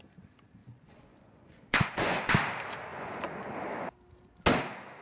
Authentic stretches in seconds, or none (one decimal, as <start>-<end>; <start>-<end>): 0.0-0.6; 2.2-2.9; 3.5-5.0